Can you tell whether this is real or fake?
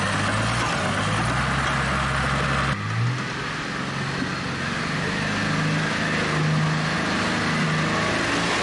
real